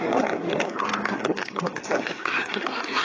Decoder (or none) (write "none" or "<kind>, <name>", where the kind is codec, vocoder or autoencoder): codec, SNAC